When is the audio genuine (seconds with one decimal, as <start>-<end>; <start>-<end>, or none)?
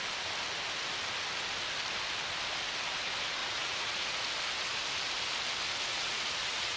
0.0-3.4; 4.2-5.9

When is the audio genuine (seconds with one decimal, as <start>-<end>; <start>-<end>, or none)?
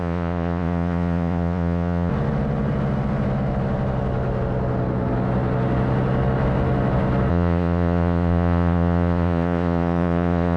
2.1-7.3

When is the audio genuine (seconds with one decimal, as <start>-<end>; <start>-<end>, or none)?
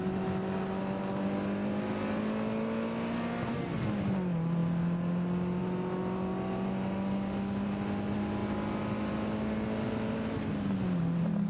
0.0-11.5